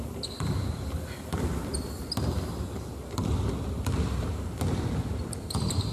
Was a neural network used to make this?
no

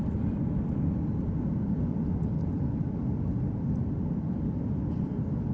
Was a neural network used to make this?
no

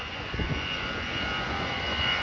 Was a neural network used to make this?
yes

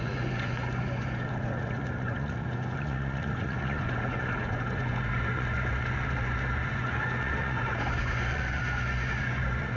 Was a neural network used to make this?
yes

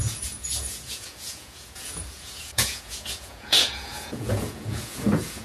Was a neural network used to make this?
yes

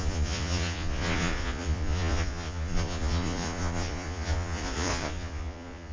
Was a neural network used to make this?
yes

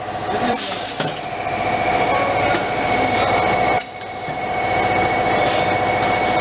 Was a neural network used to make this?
no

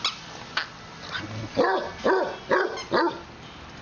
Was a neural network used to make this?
no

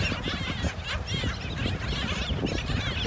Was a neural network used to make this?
no